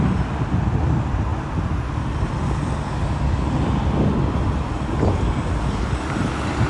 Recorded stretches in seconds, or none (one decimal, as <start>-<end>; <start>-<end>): 0.0-6.7